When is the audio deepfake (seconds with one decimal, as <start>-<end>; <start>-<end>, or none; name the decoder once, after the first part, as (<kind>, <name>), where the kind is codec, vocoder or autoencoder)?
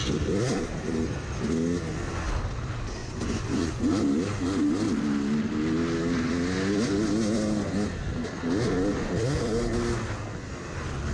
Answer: 3.0-4.0 (vocoder, Vocos)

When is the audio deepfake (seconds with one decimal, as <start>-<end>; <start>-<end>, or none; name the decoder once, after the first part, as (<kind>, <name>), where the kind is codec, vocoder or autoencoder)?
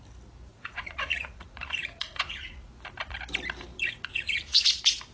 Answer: 0.5-2.7 (vocoder, Vocos); 3.7-4.6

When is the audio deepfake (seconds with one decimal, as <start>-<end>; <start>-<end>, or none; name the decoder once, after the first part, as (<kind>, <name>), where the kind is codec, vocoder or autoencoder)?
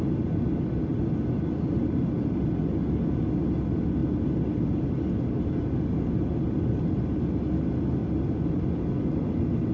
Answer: none